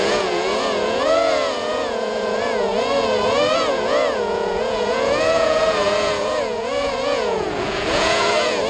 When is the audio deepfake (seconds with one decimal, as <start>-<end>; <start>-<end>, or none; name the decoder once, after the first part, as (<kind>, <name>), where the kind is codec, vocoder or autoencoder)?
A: 0.0-8.7 (vocoder, Vocos)